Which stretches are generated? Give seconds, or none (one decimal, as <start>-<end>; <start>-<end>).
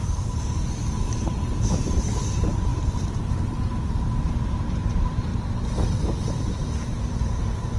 0.0-5.3; 6.2-7.8